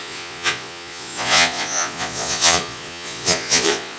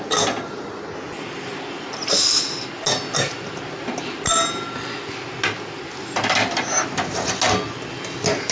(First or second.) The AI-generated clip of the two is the first